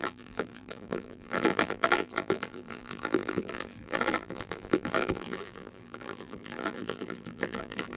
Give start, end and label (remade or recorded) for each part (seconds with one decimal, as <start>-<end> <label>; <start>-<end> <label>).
0.0-8.0 remade